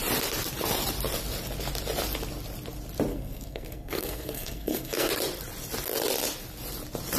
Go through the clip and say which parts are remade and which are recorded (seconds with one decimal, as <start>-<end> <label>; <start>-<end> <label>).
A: 0.0-3.1 recorded; 3.1-5.1 remade; 5.1-7.2 recorded